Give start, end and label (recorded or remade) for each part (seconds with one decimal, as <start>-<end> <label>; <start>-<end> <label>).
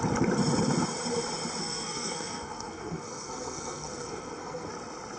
0.0-1.6 recorded; 1.6-4.7 remade; 4.7-5.2 recorded